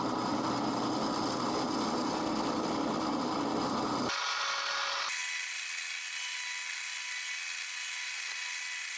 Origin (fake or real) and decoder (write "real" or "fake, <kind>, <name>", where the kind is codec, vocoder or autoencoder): real